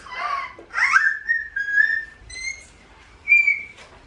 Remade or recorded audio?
remade